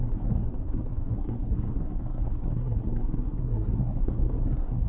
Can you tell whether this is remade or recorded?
remade